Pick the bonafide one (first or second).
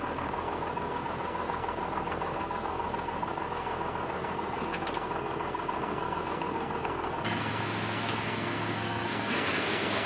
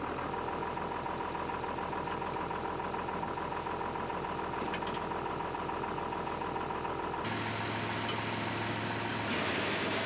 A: second